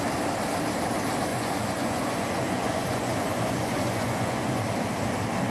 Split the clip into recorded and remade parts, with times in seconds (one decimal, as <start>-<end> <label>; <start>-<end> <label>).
0.0-1.3 recorded; 1.3-4.6 remade; 4.6-5.5 recorded